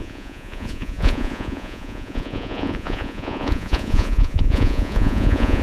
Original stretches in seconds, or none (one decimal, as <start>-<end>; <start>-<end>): none